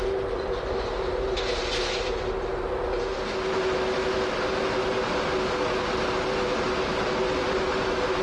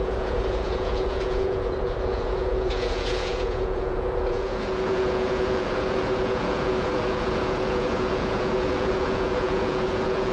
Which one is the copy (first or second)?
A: second